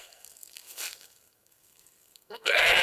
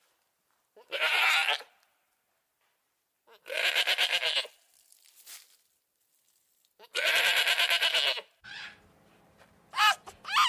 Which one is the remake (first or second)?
first